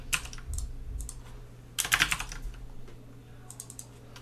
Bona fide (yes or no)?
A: yes